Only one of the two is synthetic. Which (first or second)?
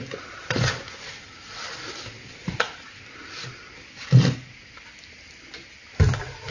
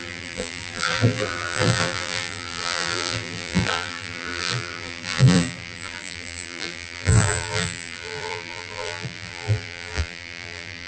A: second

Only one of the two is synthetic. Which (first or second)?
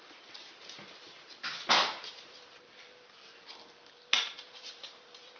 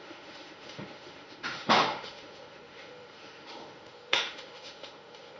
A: second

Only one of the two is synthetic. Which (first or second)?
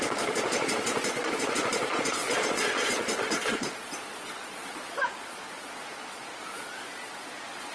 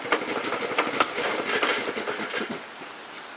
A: first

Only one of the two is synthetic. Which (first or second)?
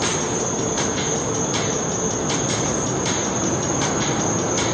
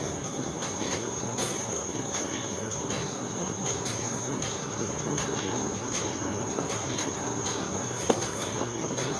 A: second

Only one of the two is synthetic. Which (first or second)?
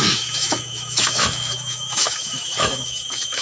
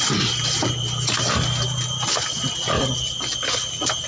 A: first